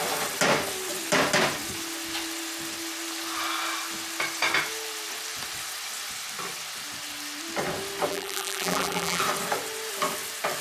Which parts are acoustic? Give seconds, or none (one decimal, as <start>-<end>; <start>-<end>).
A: 0.0-8.1; 9.2-10.6